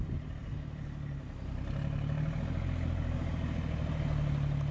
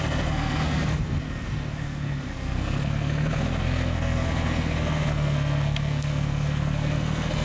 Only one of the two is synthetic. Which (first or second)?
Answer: second